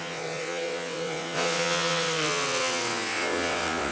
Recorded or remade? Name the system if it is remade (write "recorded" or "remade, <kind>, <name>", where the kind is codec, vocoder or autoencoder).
remade, vocoder, WaveNeXt